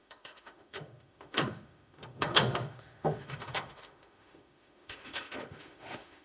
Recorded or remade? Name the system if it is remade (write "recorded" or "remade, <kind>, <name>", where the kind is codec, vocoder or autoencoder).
remade, autoencoder, DAC-VAE